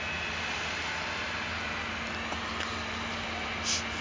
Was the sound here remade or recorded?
recorded